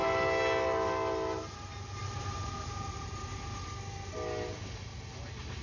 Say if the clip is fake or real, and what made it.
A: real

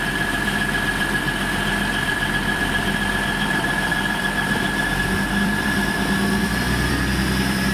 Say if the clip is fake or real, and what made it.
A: fake, vocoder, BigVGAN v2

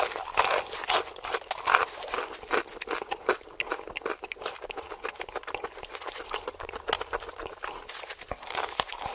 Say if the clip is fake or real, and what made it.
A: real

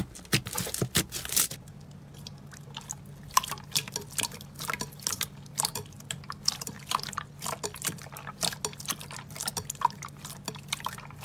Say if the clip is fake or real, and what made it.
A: real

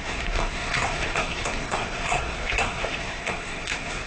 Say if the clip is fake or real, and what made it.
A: fake, codec, SNAC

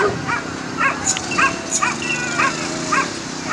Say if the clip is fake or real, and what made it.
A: real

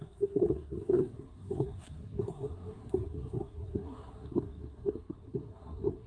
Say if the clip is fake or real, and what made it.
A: fake, codec, SNAC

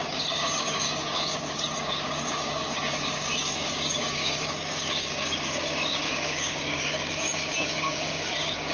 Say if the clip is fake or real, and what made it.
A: fake, codec, DAC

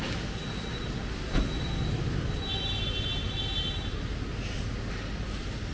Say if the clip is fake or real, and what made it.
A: real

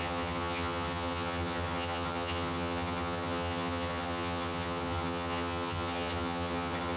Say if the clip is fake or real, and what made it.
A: fake, vocoder, HiFi-GAN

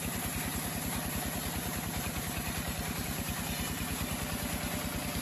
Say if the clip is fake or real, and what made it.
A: fake, vocoder, BigVGAN v2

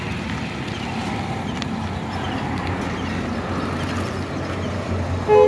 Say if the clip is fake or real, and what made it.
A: real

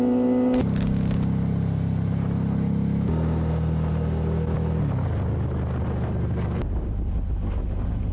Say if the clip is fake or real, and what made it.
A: real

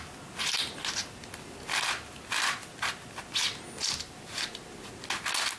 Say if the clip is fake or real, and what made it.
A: real